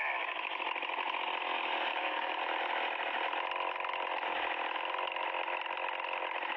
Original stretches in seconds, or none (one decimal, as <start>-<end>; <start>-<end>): 0.0-1.9; 2.4-6.6